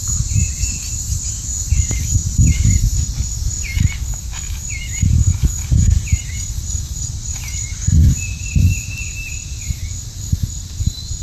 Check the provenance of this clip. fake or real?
real